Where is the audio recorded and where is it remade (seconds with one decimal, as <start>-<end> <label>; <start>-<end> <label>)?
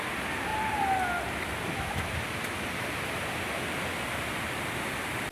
0.0-5.3 recorded